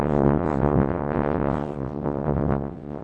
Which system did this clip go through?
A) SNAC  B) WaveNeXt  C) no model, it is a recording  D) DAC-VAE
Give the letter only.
B